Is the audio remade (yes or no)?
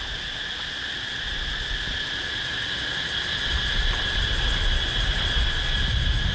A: no